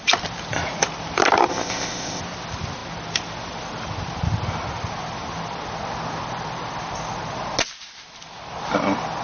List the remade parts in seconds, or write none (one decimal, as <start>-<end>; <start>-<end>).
1.5-2.2

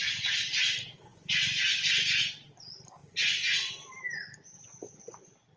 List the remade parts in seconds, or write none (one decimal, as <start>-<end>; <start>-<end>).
none

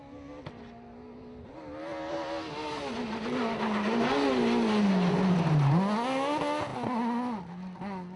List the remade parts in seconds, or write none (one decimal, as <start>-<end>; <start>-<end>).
none

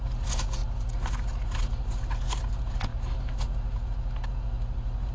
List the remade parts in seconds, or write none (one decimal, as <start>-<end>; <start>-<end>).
none

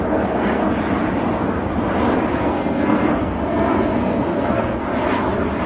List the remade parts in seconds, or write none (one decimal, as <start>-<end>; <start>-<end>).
0.0-0.6; 2.3-4.9

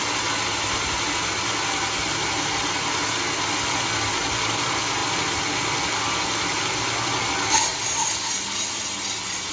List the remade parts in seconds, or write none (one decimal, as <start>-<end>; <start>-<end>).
none

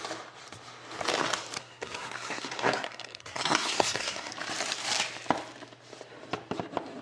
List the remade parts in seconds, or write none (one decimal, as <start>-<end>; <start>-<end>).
1.6-4.3